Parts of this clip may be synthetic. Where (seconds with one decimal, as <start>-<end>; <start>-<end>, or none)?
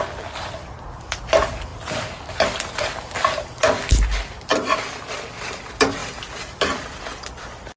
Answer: none